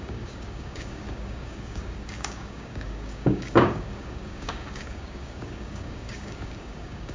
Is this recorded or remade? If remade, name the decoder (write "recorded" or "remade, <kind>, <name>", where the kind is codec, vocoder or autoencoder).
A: remade, codec, DAC